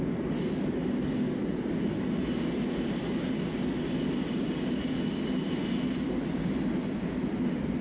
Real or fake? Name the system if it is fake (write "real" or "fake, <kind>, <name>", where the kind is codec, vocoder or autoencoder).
real